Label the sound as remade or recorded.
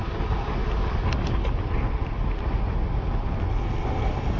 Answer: recorded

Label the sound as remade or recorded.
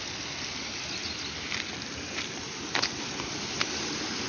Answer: recorded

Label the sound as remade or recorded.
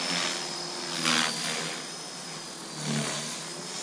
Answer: recorded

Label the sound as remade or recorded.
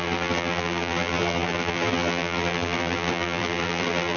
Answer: remade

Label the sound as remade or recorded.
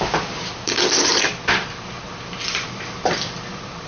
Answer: remade